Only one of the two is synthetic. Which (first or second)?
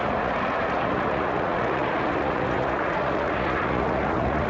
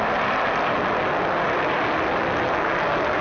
first